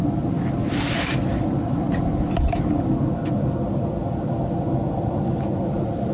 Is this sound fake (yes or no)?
no